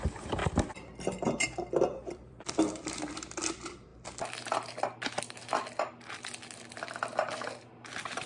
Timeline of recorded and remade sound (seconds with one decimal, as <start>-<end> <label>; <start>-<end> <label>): 0.0-0.4 recorded; 0.4-3.4 remade; 3.4-8.3 recorded